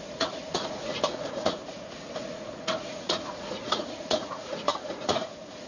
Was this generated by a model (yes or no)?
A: yes